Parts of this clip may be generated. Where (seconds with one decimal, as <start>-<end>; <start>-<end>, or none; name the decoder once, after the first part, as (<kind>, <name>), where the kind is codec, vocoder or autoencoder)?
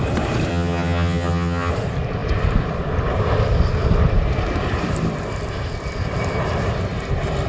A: 0.5-1.7 (vocoder, HiFi-GAN)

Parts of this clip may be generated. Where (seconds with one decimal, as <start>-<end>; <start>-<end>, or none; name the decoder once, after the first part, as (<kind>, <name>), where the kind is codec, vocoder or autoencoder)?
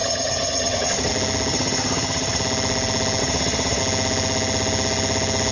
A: 0.0-1.1 (vocoder, HiFi-GAN); 1.5-2.4; 3.2-3.8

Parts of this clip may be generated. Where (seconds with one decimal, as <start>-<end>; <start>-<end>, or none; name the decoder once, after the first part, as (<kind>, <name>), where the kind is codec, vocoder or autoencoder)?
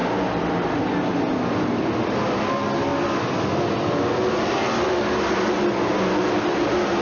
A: none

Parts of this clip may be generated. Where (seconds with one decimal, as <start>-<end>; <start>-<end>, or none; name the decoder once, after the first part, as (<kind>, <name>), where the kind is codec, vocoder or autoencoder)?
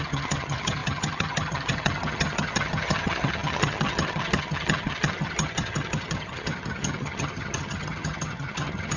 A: 0.0-9.0 (vocoder, HiFi-GAN)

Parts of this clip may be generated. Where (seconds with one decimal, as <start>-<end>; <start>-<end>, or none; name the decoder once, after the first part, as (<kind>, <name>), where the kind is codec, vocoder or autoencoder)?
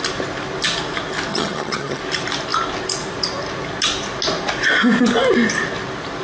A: 1.3-2.0 (vocoder, HiFi-GAN)